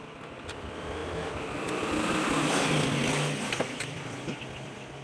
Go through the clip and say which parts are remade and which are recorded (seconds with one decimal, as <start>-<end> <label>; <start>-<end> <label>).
0.0-5.0 recorded